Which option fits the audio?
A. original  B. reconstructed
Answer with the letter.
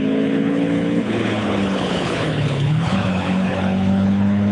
B